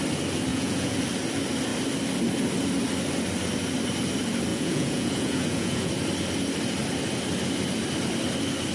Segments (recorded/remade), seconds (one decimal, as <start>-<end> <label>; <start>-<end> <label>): 0.0-0.5 recorded; 0.5-1.0 remade; 1.0-4.5 recorded; 4.5-5.9 remade; 5.9-8.7 recorded